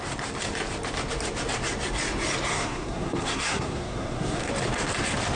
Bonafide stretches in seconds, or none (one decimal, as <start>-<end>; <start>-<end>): 0.0-2.5; 4.5-5.4